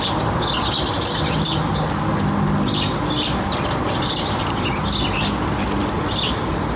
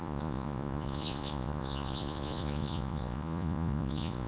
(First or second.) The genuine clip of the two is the first